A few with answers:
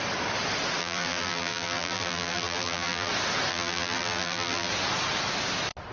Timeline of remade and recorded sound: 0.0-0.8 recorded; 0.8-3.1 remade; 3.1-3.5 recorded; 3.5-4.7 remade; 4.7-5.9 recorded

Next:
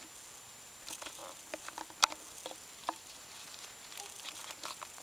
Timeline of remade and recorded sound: 0.0-2.8 recorded; 2.8-3.6 remade; 3.6-5.0 recorded

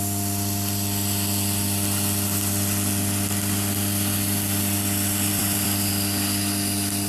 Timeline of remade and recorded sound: 0.0-5.3 recorded; 5.3-5.9 remade; 5.9-7.1 recorded

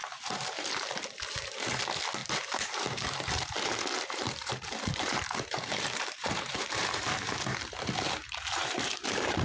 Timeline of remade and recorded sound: 0.0-1.8 remade; 1.8-2.2 recorded; 2.2-7.3 remade; 7.3-8.2 recorded; 8.2-9.4 remade

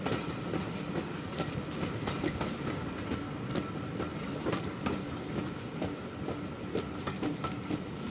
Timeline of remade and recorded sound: 0.0-4.1 recorded; 4.1-4.6 remade; 4.6-8.1 recorded

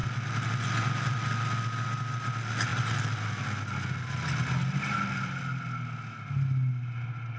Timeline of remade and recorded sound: 0.0-7.4 recorded

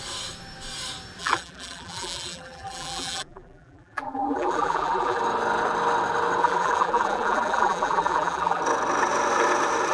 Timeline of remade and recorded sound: 0.0-1.2 recorded; 1.2-5.2 remade; 5.2-6.4 recorded; 6.4-8.6 remade; 8.6-9.9 recorded

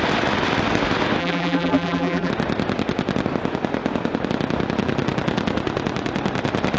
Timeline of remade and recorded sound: 0.0-1.2 recorded; 1.2-2.3 remade; 2.3-6.8 recorded